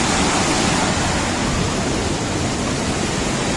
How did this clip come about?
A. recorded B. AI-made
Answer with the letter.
A